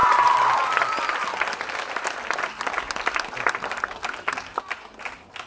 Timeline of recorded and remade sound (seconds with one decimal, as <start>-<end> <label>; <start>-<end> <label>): 0.0-5.5 recorded